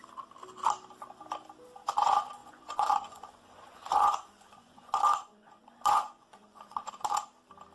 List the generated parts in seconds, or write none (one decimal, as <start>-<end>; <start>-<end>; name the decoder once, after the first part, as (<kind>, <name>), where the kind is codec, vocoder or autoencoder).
2.4-6.9 (vocoder, Vocos)